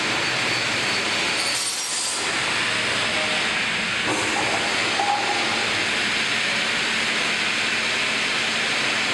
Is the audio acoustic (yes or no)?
yes